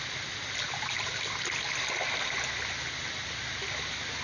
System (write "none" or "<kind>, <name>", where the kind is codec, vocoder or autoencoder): none